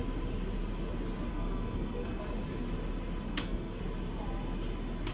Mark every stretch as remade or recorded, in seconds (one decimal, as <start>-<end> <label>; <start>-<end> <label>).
0.0-1.3 recorded; 1.3-2.2 remade; 2.2-3.3 recorded; 3.3-3.8 remade; 3.8-5.1 recorded